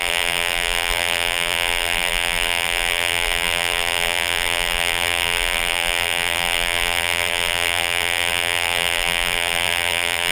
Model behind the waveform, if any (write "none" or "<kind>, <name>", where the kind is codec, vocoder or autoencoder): vocoder, BigVGAN v2